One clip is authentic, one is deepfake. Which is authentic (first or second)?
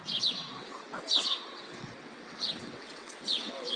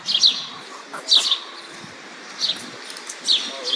second